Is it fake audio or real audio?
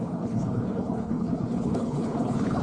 fake